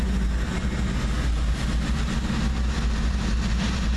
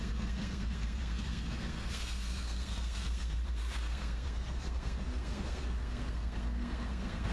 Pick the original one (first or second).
first